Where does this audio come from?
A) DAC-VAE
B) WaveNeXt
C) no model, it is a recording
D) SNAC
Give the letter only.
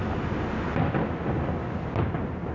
C